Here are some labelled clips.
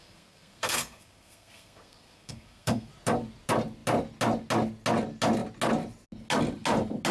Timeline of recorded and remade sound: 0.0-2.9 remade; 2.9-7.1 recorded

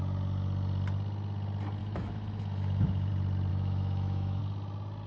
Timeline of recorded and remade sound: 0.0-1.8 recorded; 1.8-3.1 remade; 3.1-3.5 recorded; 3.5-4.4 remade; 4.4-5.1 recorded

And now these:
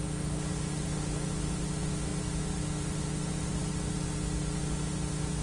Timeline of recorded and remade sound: 0.0-5.4 recorded

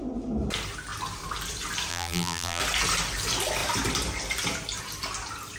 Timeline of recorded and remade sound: 0.0-1.9 recorded; 1.9-2.6 remade; 2.6-5.6 recorded

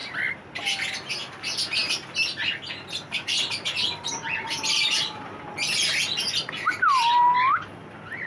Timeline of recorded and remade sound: 0.0-8.3 recorded

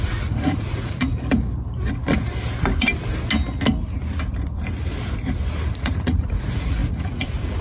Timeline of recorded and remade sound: 0.0-1.1 remade; 1.1-5.7 recorded; 5.7-7.6 remade

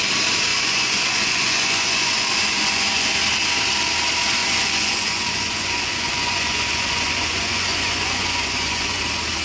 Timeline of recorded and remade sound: 0.0-0.5 recorded; 0.5-3.1 remade; 3.1-4.4 recorded; 4.4-9.0 remade; 9.0-9.4 recorded

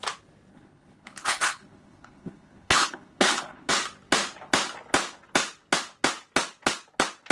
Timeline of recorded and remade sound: 0.0-0.5 recorded; 0.5-3.7 remade; 3.7-7.3 recorded